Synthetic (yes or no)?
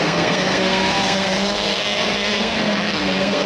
yes